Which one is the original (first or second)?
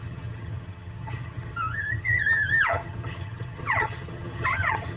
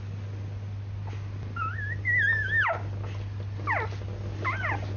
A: second